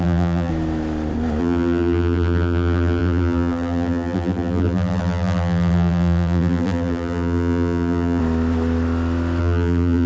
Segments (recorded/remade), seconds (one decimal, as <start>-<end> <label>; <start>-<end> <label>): 0.0-0.5 remade; 0.5-1.4 recorded; 1.4-8.2 remade; 8.2-9.4 recorded; 9.4-10.1 remade